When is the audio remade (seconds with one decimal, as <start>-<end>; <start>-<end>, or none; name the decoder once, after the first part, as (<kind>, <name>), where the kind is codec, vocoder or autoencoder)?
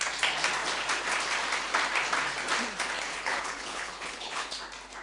3.1-4.5 (codec, HILCodec)